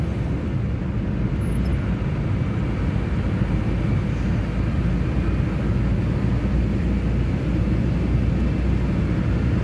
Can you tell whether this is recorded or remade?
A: recorded